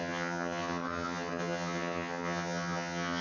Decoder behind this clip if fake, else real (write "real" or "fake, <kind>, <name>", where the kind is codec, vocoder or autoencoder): fake, vocoder, HiFi-GAN